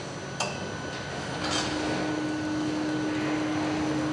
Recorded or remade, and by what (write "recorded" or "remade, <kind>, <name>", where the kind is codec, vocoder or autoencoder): recorded